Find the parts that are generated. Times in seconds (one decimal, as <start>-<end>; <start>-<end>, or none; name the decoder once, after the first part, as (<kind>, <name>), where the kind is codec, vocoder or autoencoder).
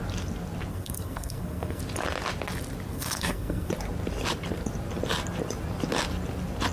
0.7-1.8 (codec, SNAC); 2.9-3.7